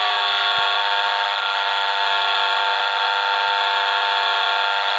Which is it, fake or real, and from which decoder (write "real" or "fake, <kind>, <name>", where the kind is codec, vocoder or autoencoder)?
real